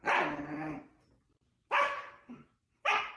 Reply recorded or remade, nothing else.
recorded